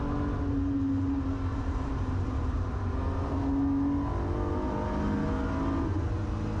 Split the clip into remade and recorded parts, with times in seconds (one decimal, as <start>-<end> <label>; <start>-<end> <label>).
0.0-1.5 recorded; 1.5-3.4 remade; 3.4-6.6 recorded